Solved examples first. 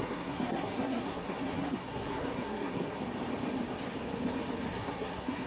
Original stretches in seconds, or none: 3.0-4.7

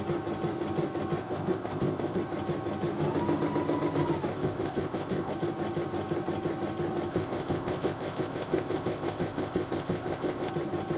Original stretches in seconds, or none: 0.0-1.2; 2.2-4.3; 5.3-7.1; 10.5-11.0